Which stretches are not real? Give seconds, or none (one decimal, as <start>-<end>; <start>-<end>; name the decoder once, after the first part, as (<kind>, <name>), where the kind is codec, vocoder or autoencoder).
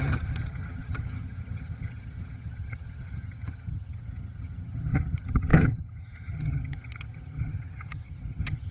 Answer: 0.0-8.7 (vocoder, HiFi-GAN)